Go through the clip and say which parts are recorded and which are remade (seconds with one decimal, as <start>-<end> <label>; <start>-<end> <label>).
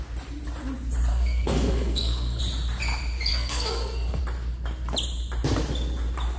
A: 0.0-1.1 recorded; 1.1-2.4 remade; 2.4-3.3 recorded; 3.3-4.2 remade; 4.2-6.4 recorded